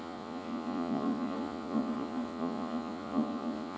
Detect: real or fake fake